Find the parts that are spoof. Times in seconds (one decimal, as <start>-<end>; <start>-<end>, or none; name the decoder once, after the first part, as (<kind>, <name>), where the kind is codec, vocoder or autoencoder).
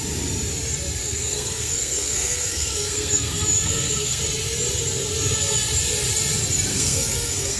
1.0-4.2 (codec, SNAC); 6.7-7.6